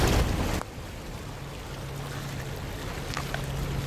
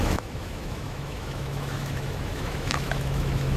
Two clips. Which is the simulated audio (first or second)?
second